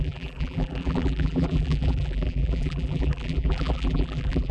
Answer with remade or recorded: remade